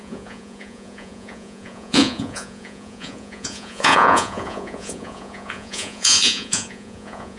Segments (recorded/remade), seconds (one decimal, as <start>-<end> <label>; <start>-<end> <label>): 0.0-7.4 remade